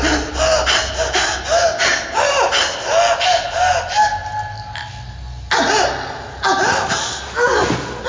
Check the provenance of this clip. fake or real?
real